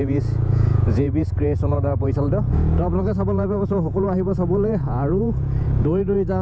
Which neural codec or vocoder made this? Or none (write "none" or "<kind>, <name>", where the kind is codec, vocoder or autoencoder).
vocoder, Vocos